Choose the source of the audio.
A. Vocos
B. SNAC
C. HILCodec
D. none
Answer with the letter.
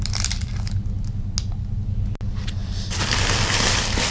D